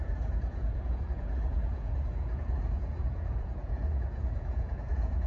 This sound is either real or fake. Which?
fake